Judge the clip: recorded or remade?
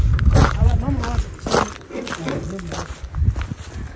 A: recorded